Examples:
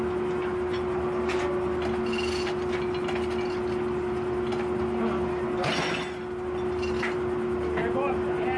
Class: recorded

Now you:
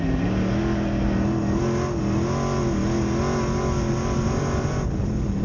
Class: recorded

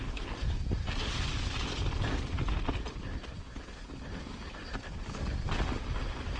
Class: recorded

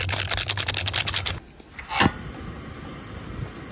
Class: recorded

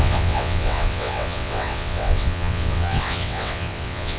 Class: remade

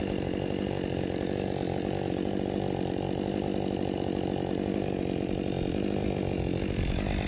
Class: recorded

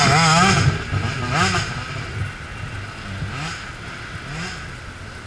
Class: recorded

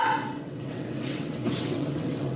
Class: remade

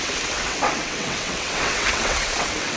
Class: remade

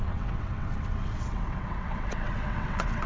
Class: remade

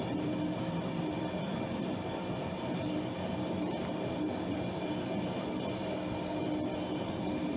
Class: recorded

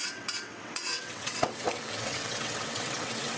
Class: remade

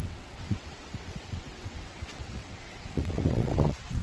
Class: remade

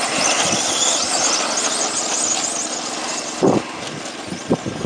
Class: recorded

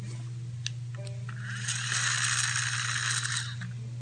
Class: recorded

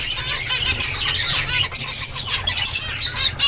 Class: recorded